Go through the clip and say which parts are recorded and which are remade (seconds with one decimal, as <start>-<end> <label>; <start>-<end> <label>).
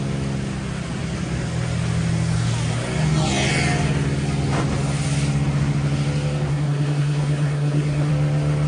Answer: 0.0-6.5 recorded; 6.5-8.1 remade; 8.1-8.7 recorded